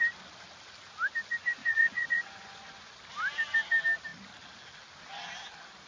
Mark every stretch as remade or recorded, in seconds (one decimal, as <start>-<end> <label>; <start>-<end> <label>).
0.0-1.6 recorded; 1.6-2.9 remade; 2.9-5.9 recorded